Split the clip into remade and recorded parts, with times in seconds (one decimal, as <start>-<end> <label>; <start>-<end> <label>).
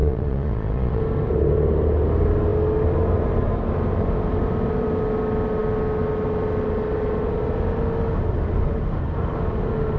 0.0-1.0 remade; 1.0-10.0 recorded